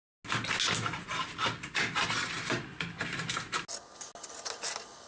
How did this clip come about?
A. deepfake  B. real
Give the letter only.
B